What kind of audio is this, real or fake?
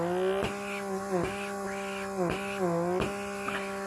real